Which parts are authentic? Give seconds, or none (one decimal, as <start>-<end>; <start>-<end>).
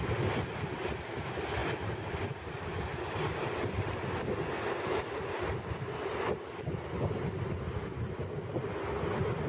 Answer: 0.0-9.5